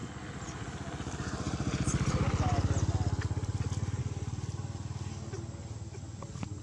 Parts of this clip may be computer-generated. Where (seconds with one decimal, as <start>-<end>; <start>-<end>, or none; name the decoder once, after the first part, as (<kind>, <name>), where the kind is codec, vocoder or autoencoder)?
none